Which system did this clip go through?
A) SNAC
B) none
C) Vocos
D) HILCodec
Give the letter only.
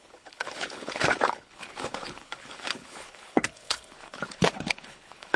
D